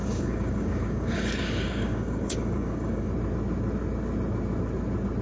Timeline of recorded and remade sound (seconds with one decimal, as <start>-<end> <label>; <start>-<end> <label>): 0.0-3.1 remade; 3.1-5.2 recorded